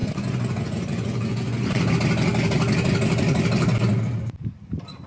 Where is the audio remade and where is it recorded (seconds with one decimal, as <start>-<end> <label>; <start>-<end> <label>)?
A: 0.0-1.9 remade; 1.9-5.1 recorded